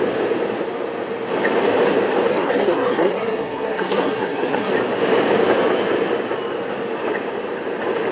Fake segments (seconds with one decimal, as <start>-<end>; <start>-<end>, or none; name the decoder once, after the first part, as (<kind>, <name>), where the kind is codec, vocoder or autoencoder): 2.3-4.7 (codec, SNAC)